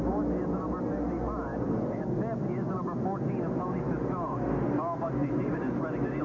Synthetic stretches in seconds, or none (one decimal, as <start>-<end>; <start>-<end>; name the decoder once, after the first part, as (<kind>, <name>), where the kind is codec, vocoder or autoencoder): 1.5-2.0 (vocoder, BigVGAN v2)